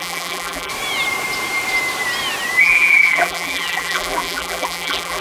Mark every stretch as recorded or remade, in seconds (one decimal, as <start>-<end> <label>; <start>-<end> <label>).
0.0-0.7 remade; 0.7-2.6 recorded; 2.6-5.2 remade